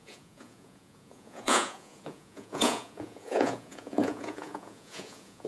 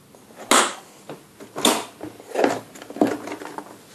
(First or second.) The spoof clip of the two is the first